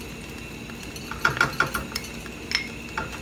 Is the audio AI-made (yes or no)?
no